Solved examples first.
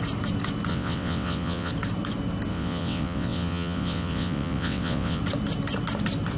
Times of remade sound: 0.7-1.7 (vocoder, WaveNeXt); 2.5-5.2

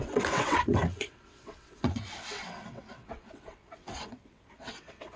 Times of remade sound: 0.0-5.2 (vocoder, WaveNeXt)